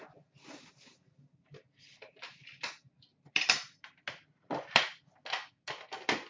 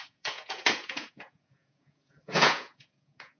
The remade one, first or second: second